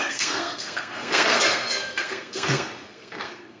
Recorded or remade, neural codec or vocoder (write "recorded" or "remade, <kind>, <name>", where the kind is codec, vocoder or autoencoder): remade, codec, SNAC